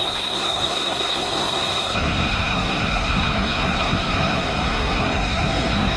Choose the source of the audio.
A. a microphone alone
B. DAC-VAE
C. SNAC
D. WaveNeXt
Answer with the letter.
C